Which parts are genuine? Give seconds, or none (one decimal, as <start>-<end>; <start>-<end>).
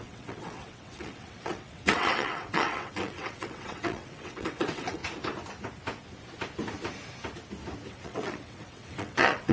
5.0-7.9